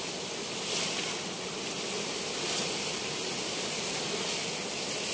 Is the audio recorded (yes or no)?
yes